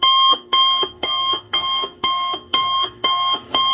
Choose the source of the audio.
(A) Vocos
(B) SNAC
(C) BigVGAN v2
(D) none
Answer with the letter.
B